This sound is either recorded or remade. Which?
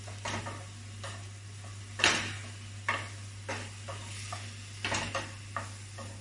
recorded